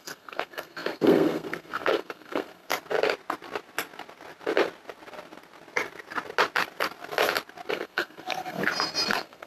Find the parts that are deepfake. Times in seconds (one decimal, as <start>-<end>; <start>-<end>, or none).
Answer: 0.0-2.7; 7.7-8.6; 9.1-9.5